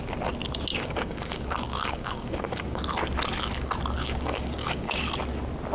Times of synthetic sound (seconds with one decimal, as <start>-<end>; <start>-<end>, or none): 0.7-2.8; 4.0-5.1